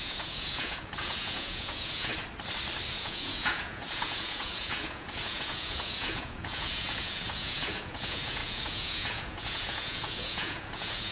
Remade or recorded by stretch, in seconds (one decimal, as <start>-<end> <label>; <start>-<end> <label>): 0.0-2.1 remade; 2.1-2.9 recorded; 2.9-11.1 remade